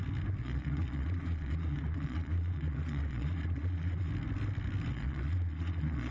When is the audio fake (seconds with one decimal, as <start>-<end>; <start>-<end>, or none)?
0.4-4.1; 4.9-6.1